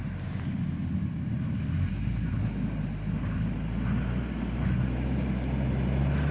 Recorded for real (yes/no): yes